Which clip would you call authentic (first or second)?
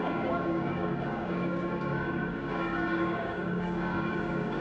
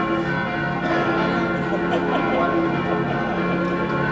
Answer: second